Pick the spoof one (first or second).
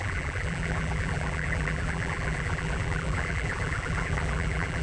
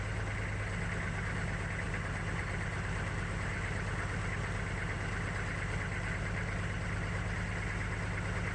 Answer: first